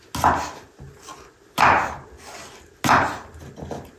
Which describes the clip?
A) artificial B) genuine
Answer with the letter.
B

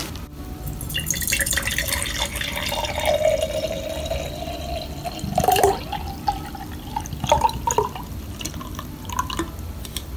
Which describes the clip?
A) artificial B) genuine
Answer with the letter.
B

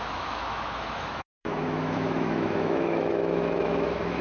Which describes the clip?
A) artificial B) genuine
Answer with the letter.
A